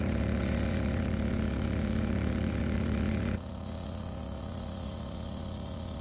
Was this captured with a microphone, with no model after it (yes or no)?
no